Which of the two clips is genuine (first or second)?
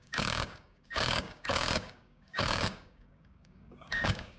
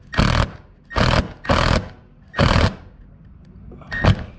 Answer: second